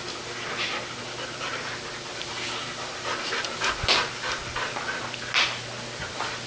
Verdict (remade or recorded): recorded